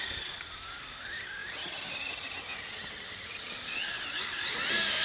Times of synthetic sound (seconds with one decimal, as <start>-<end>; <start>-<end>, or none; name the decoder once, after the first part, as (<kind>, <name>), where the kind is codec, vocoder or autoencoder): none